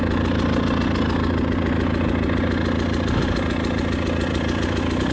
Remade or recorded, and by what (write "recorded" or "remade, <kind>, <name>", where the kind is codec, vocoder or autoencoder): recorded